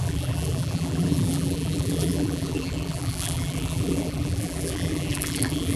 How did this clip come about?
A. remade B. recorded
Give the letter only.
A